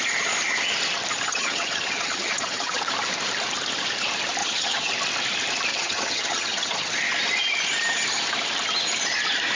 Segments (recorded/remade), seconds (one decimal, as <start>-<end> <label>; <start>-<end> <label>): 0.0-1.3 recorded; 1.3-2.8 remade; 2.8-4.4 recorded; 4.4-4.9 remade; 4.9-5.7 recorded; 5.7-6.9 remade; 6.9-9.6 recorded